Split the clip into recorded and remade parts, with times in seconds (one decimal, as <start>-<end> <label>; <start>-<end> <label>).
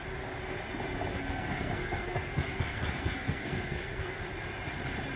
0.0-1.1 recorded; 1.1-4.2 remade; 4.2-5.2 recorded